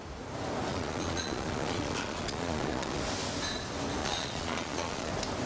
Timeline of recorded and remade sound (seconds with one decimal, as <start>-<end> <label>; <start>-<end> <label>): 0.0-0.7 recorded; 0.7-3.0 remade; 3.0-4.0 recorded; 4.0-5.1 remade; 5.1-5.5 recorded